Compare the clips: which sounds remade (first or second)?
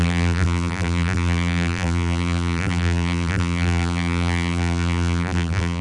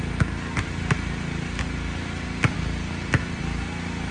first